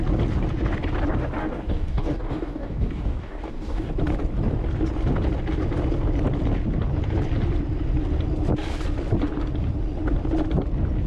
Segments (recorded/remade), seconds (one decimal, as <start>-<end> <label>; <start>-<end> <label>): 0.0-1.4 recorded; 1.4-3.9 remade; 3.9-11.1 recorded